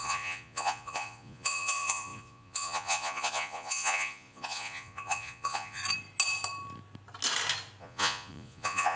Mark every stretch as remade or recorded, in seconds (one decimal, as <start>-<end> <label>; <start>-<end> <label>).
0.0-5.8 remade; 5.8-7.8 recorded; 7.8-9.0 remade